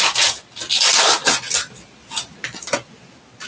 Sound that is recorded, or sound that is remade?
recorded